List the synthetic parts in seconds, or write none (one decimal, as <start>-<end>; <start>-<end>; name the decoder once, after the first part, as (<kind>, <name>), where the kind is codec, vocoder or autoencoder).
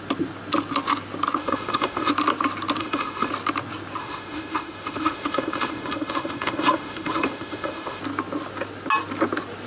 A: 1.4-2.1 (autoencoder, DAC-VAE); 2.8-3.3; 4.0-8.0